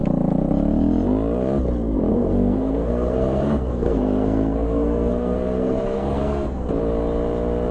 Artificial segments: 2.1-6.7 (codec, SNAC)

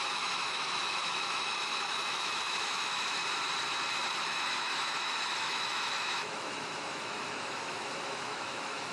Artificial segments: 0.0-3.2 (autoencoder, DAC-VAE); 4.2-8.9

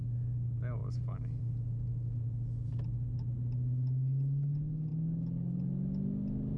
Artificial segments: none

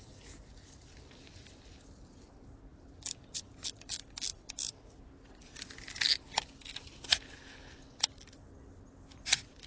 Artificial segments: 2.7-3.9 (vocoder, BigVGAN v2)

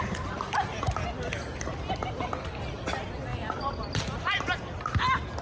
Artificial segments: none

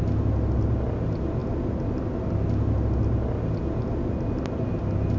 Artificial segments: none